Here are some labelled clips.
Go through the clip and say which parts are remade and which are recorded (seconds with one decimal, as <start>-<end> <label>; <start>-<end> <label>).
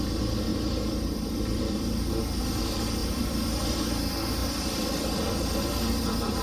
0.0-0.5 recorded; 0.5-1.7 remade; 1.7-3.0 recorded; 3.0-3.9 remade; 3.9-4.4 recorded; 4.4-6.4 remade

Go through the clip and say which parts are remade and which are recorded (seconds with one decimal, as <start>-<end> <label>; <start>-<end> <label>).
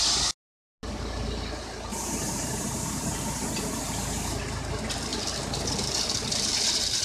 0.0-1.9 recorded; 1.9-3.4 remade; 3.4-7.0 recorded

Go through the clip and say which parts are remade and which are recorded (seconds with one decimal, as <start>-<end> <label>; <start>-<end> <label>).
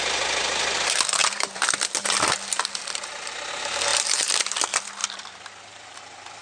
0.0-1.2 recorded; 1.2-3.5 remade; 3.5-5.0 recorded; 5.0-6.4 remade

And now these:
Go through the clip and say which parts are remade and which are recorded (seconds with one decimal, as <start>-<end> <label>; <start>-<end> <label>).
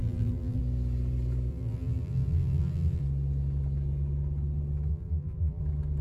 0.0-0.6 remade; 0.6-1.5 recorded; 1.5-3.0 remade; 3.0-4.9 recorded; 4.9-5.6 remade; 5.6-6.0 recorded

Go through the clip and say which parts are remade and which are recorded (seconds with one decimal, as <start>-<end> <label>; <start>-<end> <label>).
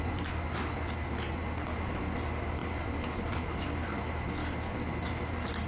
0.0-1.4 recorded; 1.4-2.0 remade; 2.0-2.6 recorded; 2.6-3.8 remade; 3.8-4.4 recorded; 4.4-5.7 remade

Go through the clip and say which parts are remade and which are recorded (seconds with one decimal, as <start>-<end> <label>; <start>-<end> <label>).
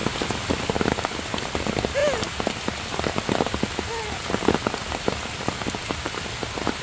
0.0-6.8 recorded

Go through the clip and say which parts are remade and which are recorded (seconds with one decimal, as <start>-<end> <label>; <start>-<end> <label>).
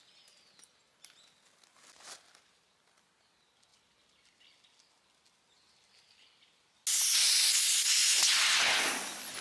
0.0-9.4 recorded